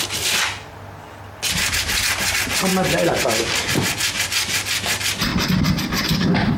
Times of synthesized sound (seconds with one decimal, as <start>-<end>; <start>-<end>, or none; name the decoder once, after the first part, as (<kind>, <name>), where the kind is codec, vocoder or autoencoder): none